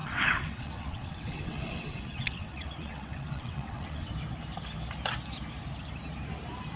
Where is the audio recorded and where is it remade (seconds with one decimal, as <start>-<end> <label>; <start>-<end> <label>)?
0.0-4.1 remade; 4.1-6.8 recorded